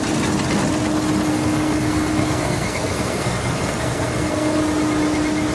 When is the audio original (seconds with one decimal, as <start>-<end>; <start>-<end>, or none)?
0.0-1.3; 4.6-5.5